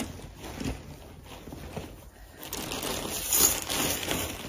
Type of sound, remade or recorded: recorded